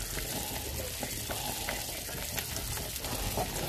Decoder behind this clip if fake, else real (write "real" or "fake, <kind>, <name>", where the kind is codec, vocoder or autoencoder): real